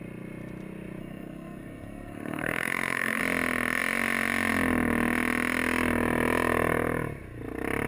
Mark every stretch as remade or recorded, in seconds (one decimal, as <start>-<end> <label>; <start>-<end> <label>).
0.0-1.0 recorded; 1.0-3.2 remade; 3.2-7.9 recorded